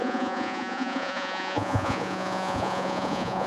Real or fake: fake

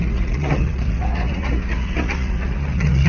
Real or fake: fake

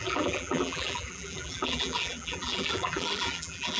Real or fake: fake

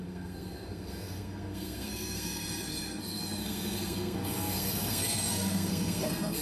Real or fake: fake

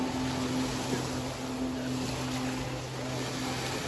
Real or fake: real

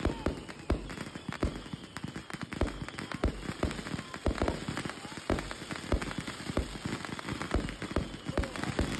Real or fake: real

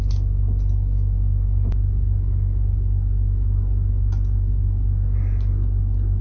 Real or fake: real